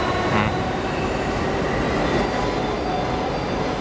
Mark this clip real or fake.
real